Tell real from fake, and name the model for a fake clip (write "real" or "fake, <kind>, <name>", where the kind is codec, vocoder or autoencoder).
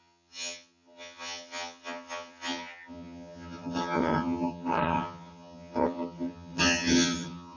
fake, vocoder, HiFi-GAN